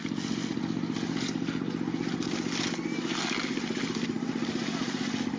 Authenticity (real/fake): real